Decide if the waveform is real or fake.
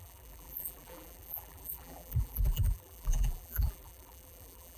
fake